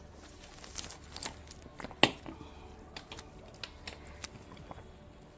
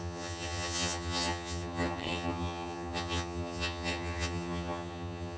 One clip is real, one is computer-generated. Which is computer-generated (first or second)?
second